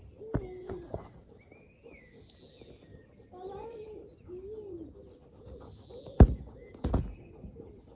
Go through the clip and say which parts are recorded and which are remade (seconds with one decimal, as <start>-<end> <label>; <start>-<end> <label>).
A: 0.0-0.6 recorded; 0.6-1.3 remade; 1.3-8.0 recorded